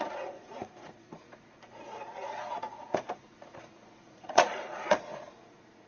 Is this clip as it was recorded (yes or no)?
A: no